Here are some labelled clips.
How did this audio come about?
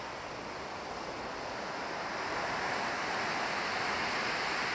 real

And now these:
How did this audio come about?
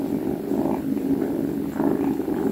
real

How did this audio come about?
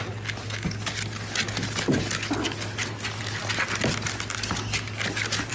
real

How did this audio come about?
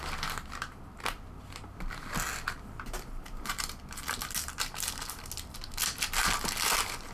real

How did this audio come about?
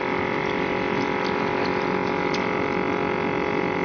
real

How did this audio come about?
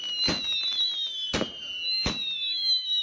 real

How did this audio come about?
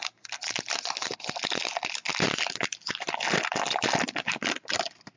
real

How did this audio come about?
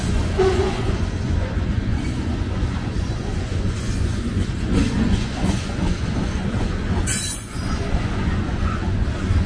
fake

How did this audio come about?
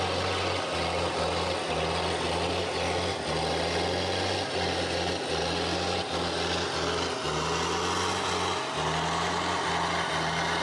real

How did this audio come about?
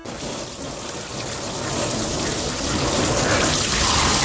real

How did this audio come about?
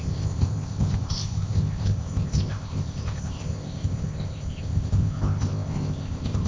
fake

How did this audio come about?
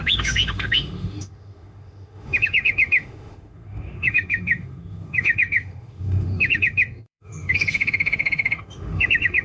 fake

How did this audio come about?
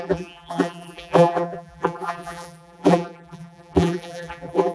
fake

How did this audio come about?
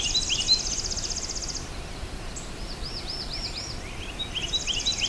real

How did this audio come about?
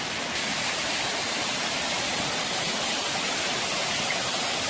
real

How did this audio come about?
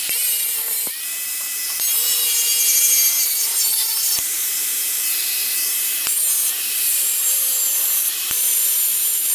fake